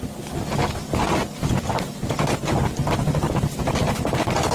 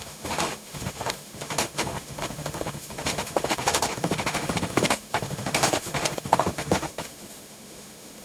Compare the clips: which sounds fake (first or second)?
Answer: second